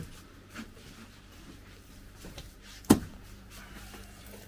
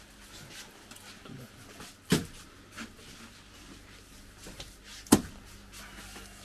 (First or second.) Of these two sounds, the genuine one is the second